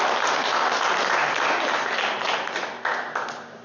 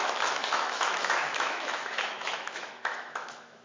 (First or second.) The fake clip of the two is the second